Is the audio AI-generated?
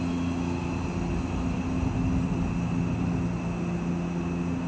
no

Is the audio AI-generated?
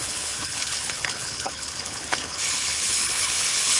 yes